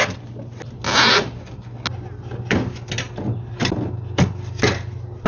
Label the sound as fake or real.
real